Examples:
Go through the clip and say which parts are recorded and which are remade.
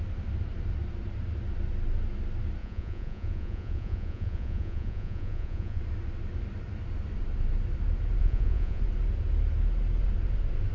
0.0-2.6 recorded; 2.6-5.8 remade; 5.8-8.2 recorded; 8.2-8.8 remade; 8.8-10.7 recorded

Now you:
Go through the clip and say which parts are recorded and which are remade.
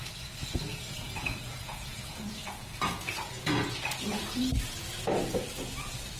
0.0-0.7 recorded; 0.7-4.4 remade; 4.4-6.2 recorded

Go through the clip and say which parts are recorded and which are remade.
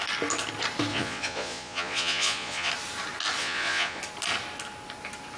0.0-0.9 recorded; 0.9-2.7 remade; 2.7-3.4 recorded; 3.4-4.0 remade; 4.0-5.4 recorded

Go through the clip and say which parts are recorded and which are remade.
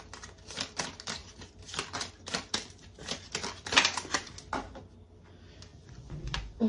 0.0-5.7 recorded; 5.7-6.7 remade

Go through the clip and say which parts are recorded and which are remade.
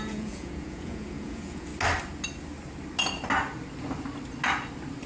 0.0-1.7 remade; 1.7-5.1 recorded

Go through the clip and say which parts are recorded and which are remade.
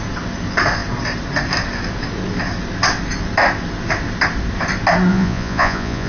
0.0-5.1 recorded; 5.1-6.1 remade